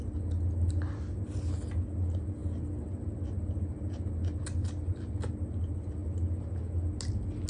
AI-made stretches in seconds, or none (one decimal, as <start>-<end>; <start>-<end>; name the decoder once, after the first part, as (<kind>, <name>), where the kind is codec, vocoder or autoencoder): none